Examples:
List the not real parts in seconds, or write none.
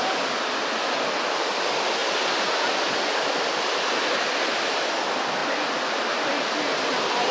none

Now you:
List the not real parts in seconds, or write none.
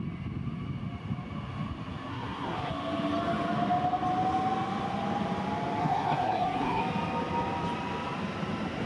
2.1-2.7 (codec, SNAC); 5.8-6.8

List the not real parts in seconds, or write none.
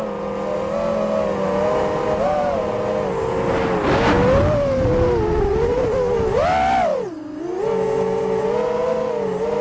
none